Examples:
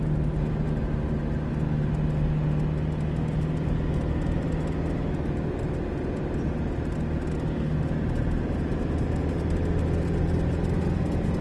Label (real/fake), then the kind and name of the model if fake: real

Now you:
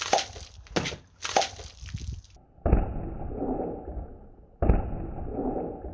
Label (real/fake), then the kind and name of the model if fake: real